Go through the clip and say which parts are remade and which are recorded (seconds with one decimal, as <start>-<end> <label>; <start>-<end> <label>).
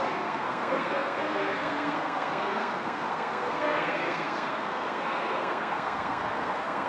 0.0-6.9 remade